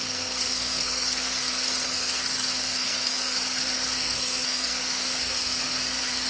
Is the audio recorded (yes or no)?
no